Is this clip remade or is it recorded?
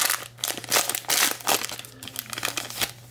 recorded